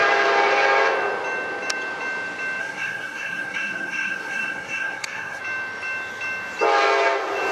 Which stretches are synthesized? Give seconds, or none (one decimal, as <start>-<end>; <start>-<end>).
2.6-5.4